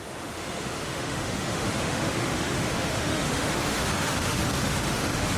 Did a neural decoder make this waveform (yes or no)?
yes